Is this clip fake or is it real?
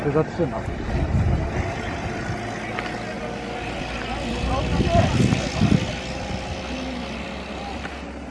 real